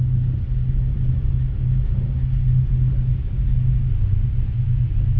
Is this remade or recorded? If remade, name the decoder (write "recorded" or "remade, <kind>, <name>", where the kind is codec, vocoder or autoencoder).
recorded